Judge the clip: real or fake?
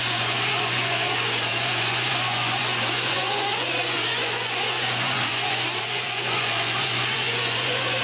fake